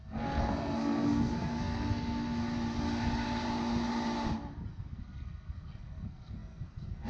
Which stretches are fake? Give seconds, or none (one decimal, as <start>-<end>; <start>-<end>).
0.0-2.4; 4.7-7.1